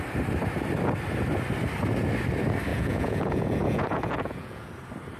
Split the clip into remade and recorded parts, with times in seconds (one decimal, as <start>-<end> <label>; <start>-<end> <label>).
0.0-2.7 recorded; 2.7-4.7 remade; 4.7-5.2 recorded